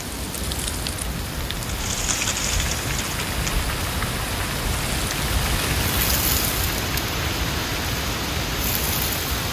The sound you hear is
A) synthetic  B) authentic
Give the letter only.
B